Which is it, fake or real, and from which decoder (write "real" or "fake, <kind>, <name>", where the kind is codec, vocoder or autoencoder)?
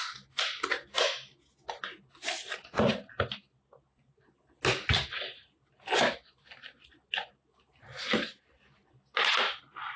real